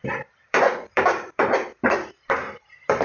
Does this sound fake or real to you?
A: fake